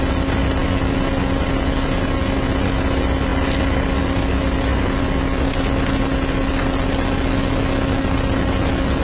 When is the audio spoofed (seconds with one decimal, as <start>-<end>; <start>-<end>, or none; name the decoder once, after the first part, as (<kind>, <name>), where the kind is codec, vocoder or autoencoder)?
none